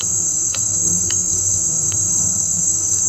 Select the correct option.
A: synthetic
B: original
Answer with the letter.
A